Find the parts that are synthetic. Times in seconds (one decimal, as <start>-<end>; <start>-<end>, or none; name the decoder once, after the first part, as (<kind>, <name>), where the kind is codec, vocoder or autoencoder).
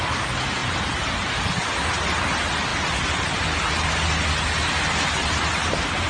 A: none